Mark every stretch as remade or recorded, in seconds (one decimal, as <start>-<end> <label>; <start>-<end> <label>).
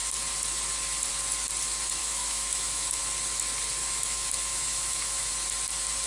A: 0.0-2.0 recorded; 2.0-3.0 remade; 3.0-3.8 recorded; 3.8-5.3 remade; 5.3-6.1 recorded